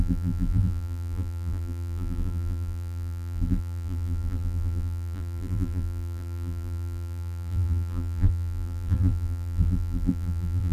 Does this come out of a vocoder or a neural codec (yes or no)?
yes